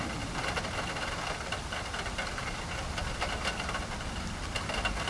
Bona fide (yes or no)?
yes